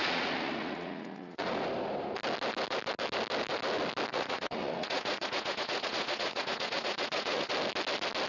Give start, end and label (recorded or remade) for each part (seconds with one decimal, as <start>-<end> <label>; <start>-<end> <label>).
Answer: 0.0-1.5 remade; 1.5-4.1 recorded; 4.1-7.5 remade; 7.5-8.3 recorded